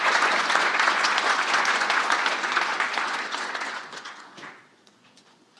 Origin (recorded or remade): remade